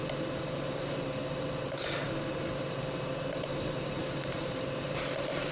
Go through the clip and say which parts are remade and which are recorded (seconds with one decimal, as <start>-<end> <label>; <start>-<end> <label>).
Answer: 0.0-3.3 recorded; 3.3-5.5 remade